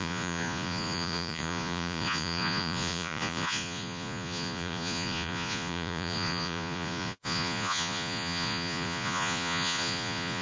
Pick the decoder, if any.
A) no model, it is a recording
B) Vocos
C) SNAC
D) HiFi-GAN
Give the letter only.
B